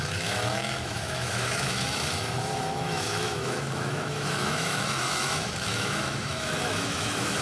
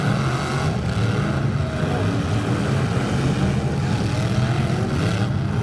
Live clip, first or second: second